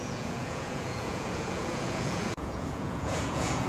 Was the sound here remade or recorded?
remade